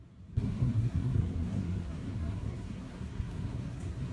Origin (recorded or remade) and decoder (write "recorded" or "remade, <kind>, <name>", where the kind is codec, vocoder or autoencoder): remade, codec, SNAC